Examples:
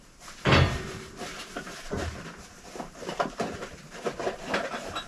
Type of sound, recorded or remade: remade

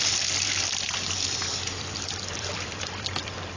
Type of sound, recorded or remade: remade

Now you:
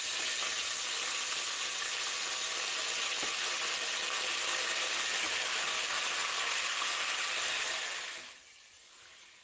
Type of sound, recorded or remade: recorded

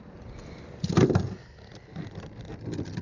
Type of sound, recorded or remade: recorded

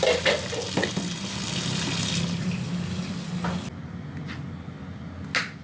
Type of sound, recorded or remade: recorded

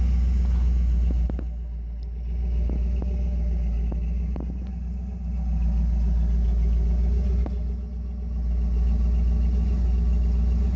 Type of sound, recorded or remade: recorded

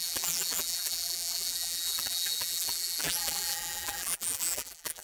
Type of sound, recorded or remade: remade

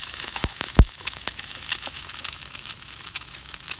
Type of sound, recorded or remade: remade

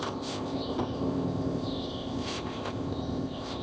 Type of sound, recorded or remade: remade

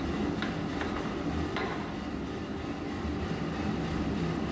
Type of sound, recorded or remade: recorded